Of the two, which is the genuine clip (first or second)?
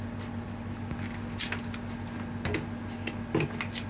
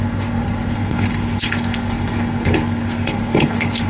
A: first